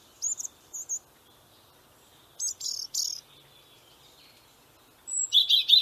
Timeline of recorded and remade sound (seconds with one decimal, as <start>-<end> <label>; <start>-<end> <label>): 0.0-5.8 recorded